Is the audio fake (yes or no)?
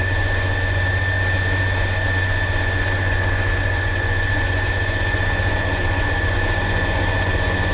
yes